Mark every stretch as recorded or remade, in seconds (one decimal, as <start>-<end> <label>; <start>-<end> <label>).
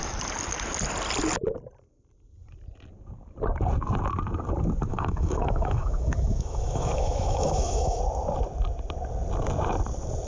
0.0-4.9 recorded; 4.9-8.0 remade; 8.0-10.3 recorded